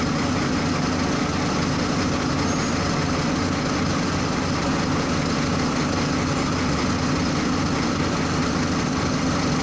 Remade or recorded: recorded